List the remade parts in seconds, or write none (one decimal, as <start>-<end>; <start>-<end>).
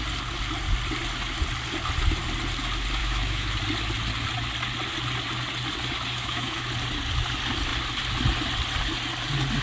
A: 3.0-3.6; 6.2-6.7